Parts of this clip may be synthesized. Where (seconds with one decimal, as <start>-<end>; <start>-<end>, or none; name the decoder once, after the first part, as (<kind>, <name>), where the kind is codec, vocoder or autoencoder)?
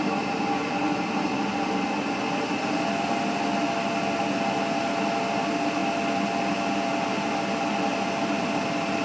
none